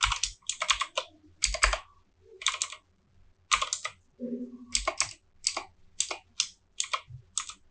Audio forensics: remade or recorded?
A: recorded